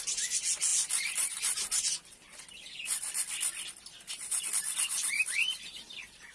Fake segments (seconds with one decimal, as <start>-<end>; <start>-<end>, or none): none